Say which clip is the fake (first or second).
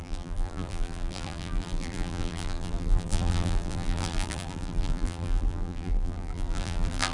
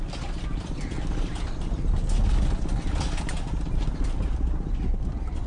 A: first